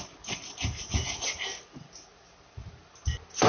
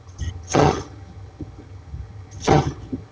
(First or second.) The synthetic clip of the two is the second